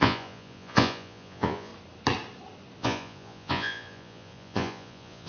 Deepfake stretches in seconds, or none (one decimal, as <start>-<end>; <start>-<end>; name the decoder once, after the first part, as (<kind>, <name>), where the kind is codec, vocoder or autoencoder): 0.0-1.7 (vocoder, Vocos); 2.8-5.3